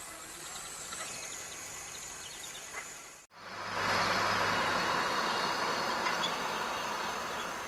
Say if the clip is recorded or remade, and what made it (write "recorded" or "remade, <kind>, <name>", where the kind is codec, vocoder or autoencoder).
recorded